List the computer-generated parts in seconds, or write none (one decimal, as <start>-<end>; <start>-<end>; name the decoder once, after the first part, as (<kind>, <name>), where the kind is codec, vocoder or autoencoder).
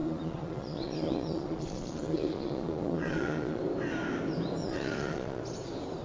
0.0-3.6 (vocoder, Vocos); 4.6-5.4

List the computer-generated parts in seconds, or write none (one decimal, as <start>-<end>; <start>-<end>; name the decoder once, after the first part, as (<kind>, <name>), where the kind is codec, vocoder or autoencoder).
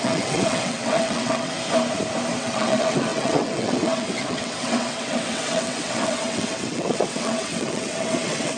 0.0-1.5 (vocoder, WaveNeXt); 2.4-8.6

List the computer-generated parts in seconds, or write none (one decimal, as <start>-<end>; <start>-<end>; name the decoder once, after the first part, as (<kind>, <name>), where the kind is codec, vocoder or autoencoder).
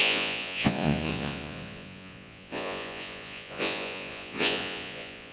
0.0-5.3 (vocoder, Vocos)